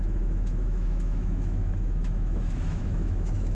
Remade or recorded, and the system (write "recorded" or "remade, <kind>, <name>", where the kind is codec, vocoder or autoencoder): remade, autoencoder, DAC-VAE